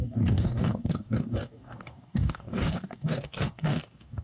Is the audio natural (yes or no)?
no